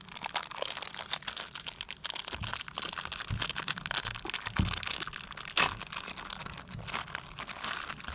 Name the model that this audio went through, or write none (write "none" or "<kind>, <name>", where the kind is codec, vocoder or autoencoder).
none